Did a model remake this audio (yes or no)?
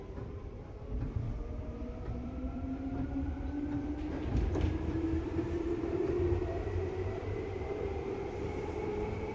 yes